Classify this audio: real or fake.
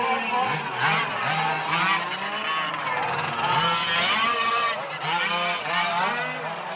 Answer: real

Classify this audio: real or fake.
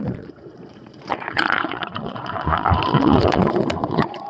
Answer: fake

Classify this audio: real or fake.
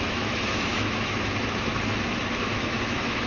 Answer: fake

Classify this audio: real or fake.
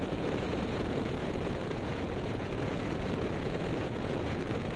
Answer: fake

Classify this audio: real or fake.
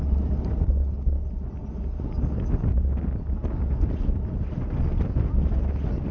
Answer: real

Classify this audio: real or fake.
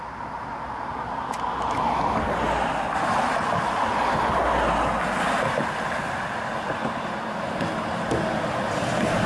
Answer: real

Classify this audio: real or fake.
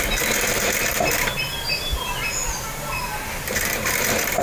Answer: real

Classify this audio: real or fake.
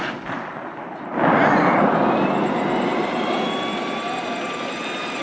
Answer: real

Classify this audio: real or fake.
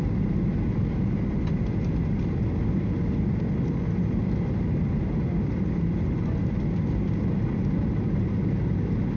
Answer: real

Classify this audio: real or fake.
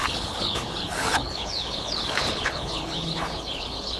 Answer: fake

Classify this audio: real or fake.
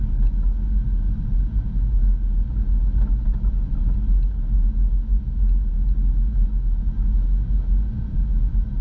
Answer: real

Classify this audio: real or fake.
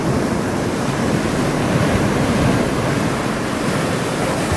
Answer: fake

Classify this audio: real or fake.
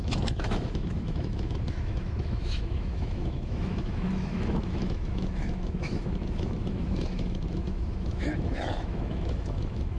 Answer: fake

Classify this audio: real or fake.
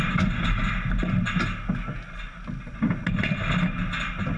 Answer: real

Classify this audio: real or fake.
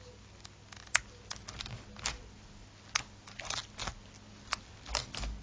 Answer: real